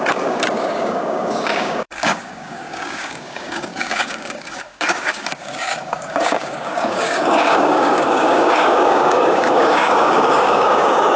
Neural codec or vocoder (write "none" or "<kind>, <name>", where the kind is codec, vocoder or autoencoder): codec, DAC